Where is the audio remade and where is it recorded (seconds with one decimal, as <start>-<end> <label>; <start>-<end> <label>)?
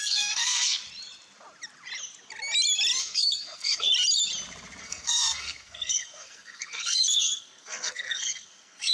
0.0-0.8 remade; 0.8-3.0 recorded; 3.0-3.9 remade; 3.9-4.8 recorded; 4.8-8.9 remade